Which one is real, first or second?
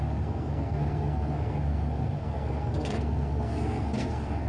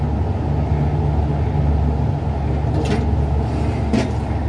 second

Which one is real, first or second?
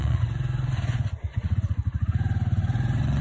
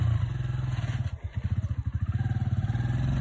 second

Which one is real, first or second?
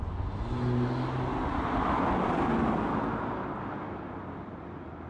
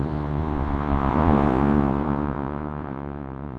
first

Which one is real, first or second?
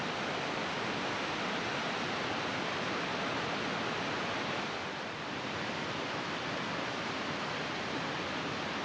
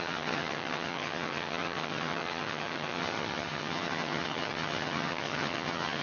first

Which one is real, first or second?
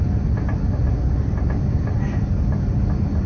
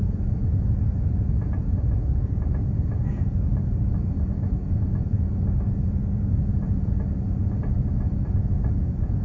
first